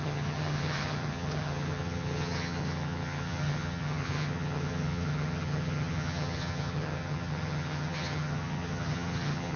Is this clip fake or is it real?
fake